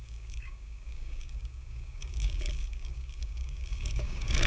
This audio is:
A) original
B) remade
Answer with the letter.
B